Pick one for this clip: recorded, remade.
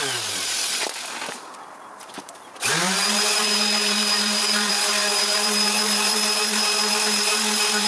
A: remade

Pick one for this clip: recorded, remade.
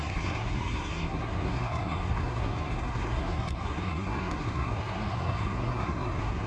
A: remade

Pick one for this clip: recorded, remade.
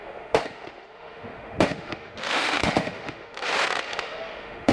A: remade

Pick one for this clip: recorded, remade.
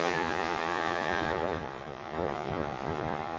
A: remade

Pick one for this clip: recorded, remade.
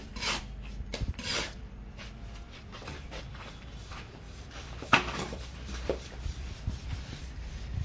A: remade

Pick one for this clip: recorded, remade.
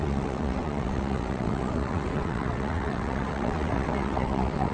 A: remade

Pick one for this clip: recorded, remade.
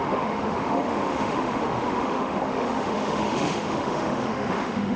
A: remade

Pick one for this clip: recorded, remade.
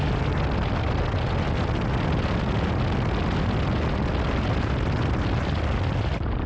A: recorded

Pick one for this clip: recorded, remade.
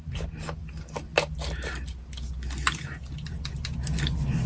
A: recorded